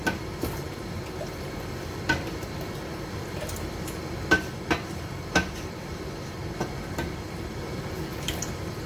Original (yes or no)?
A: yes